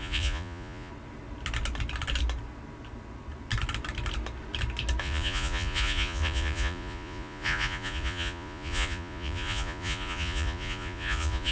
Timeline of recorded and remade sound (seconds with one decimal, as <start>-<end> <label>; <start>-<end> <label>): 0.0-0.9 remade; 0.9-5.0 recorded; 5.0-11.5 remade